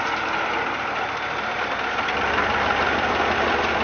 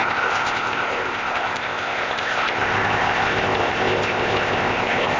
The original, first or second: first